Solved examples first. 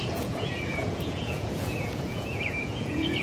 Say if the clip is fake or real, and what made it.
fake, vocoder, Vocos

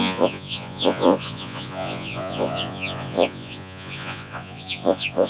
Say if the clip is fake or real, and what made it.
fake, vocoder, Vocos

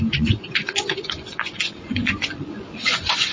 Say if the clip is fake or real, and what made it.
fake, vocoder, Vocos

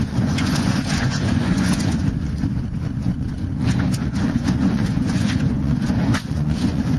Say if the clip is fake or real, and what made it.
fake, vocoder, Vocos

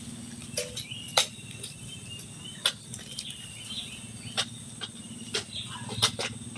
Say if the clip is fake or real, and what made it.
real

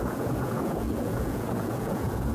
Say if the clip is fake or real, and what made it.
fake, vocoder, Vocos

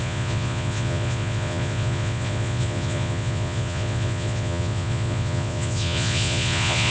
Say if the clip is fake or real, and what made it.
fake, vocoder, Vocos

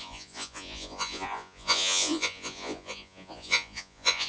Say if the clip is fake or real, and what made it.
fake, vocoder, Vocos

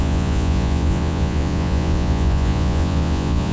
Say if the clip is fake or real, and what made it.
fake, vocoder, Vocos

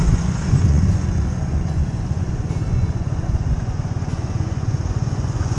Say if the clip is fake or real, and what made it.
fake, vocoder, Vocos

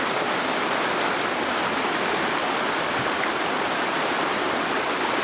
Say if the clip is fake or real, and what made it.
real